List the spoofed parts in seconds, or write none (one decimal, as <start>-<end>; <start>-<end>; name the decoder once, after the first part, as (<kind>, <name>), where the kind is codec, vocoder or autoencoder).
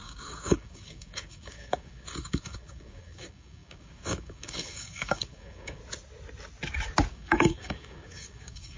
0.0-5.8 (codec, DAC); 7.1-8.8